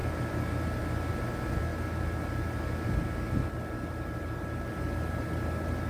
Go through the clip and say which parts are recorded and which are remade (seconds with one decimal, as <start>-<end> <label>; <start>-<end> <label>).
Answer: 0.0-5.9 recorded